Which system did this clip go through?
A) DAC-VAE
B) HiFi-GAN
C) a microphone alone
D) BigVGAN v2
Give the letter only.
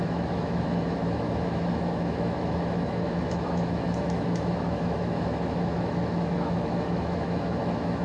A